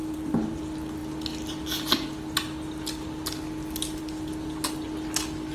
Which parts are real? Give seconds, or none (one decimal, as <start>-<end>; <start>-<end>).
0.6-5.5